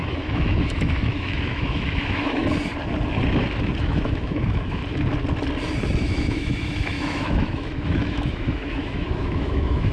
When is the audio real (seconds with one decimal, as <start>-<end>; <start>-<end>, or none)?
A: 2.4-3.8; 4.8-6.0